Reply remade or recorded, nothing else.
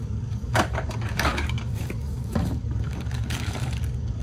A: remade